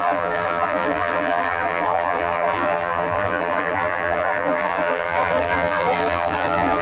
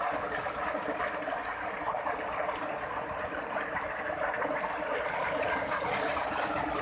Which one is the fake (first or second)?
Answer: first